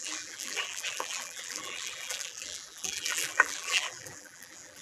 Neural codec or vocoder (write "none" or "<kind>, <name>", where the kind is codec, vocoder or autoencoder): vocoder, BigVGAN v2